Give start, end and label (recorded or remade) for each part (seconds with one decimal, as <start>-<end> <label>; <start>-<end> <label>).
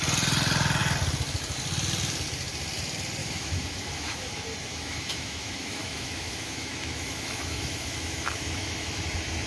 0.0-3.2 recorded; 3.2-4.3 remade; 4.3-4.7 recorded; 4.7-9.0 remade; 9.0-9.5 recorded